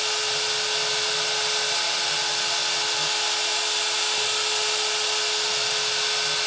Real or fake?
real